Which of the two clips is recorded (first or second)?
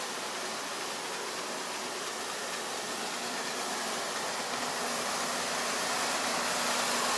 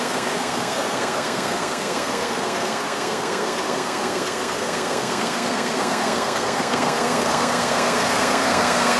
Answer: first